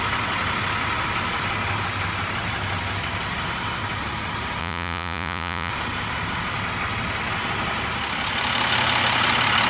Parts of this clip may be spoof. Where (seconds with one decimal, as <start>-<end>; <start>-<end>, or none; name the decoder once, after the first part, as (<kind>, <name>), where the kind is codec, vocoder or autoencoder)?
4.6-5.7 (vocoder, Vocos)